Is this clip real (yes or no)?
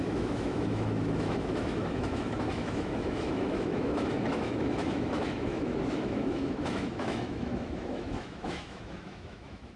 no